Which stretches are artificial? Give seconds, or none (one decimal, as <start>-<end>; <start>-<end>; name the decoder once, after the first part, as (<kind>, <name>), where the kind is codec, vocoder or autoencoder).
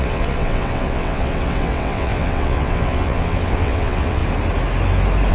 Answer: 0.0-4.2 (vocoder, WaveNeXt)